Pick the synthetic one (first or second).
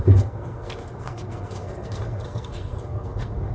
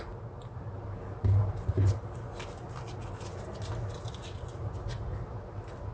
first